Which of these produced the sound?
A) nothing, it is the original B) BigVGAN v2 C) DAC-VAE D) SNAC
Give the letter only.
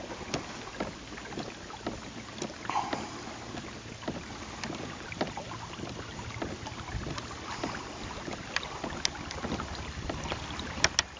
A